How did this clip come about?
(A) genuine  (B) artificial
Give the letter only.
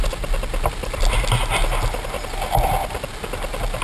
A